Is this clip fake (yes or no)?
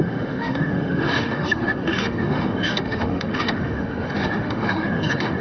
yes